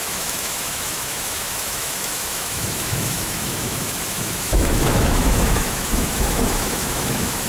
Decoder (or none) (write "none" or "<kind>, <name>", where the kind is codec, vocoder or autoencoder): autoencoder, DAC-VAE